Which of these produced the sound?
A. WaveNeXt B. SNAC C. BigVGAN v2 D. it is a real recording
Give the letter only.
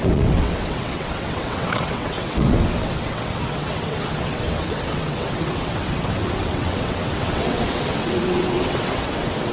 A